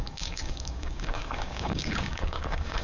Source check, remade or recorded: remade